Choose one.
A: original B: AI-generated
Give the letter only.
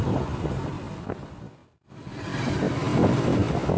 A